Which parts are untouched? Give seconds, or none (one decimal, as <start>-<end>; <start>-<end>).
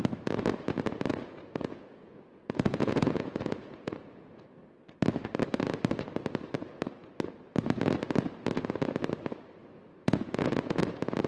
0.0-1.1; 4.4-9.6; 10.8-11.3